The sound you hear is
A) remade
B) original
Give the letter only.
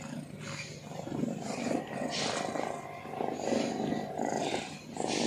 A